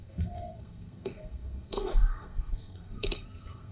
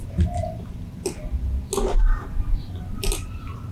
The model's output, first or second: first